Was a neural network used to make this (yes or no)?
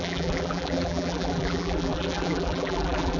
yes